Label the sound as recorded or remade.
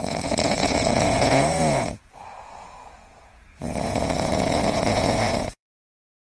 remade